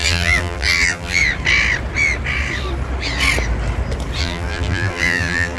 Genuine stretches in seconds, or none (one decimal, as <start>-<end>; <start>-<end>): 1.2-4.2

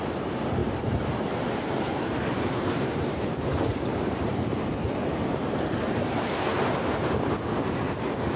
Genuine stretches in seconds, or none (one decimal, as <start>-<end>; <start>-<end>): 6.5-7.8